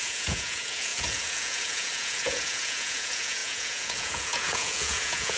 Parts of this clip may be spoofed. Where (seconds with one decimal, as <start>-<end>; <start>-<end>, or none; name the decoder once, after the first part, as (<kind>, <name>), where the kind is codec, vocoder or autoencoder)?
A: 0.0-5.4 (vocoder, Vocos)